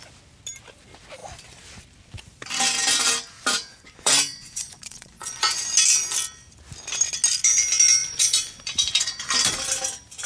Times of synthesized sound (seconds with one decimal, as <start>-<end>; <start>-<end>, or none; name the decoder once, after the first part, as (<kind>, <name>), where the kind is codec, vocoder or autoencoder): 3.7-5.7 (vocoder, Vocos); 8.0-9.3